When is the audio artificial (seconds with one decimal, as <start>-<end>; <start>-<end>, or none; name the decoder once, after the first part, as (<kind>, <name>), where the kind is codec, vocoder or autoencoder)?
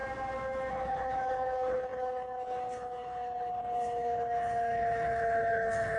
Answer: 0.7-6.0 (codec, HILCodec)